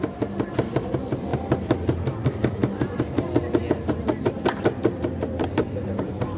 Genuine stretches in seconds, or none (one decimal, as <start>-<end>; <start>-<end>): none